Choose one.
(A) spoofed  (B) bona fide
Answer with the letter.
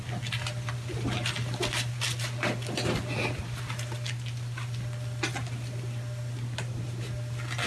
B